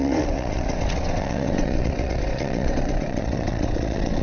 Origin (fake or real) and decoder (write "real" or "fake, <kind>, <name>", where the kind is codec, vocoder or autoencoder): fake, vocoder, WaveNeXt